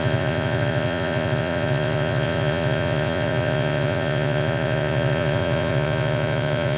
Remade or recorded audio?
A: remade